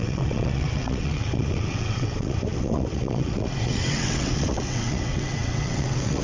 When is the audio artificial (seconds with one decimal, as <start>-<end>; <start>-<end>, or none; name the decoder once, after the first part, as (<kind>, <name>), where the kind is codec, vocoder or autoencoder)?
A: 0.0-6.2 (vocoder, WaveNeXt)